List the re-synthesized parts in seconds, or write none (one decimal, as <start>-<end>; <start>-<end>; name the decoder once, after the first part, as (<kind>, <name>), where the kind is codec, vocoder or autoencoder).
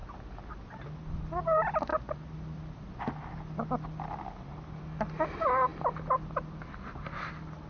none